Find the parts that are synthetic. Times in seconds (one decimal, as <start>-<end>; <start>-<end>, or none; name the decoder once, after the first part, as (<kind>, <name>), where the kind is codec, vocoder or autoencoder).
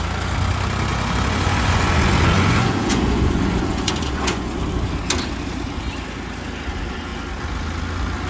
0.9-4.6 (vocoder, Vocos)